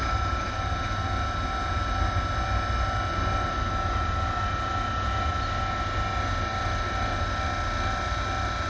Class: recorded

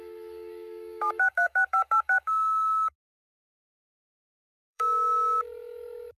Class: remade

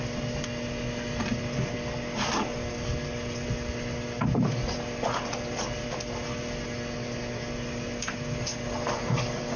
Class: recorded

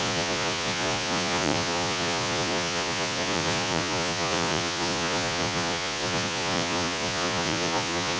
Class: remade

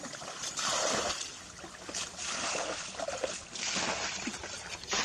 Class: recorded